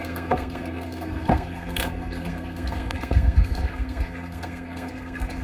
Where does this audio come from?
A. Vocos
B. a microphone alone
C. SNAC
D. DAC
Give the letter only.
C